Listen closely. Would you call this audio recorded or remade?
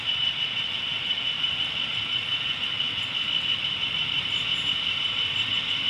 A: remade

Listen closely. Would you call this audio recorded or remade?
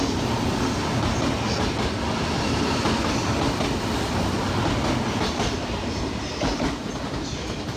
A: recorded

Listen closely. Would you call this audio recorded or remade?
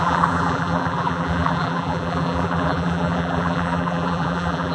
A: remade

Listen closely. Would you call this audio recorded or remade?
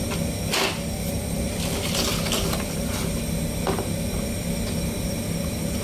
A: recorded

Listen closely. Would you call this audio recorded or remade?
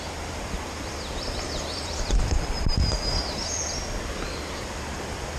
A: recorded